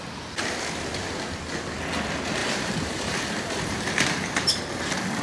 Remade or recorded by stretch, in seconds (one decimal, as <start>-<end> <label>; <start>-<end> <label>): 0.0-2.4 recorded; 2.4-4.6 remade; 4.6-5.2 recorded